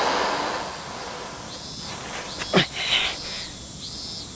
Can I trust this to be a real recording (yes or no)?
yes